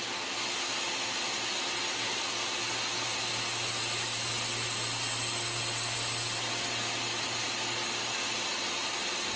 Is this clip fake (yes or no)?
no